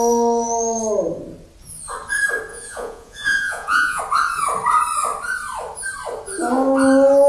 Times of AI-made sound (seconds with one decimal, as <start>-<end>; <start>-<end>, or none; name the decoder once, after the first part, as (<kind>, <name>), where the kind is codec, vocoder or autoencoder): 2.5-4.0 (vocoder, Vocos)